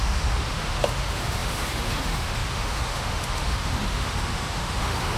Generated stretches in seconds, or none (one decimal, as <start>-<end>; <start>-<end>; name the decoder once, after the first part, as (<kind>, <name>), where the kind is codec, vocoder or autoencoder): 0.0-5.2 (autoencoder, DAC-VAE)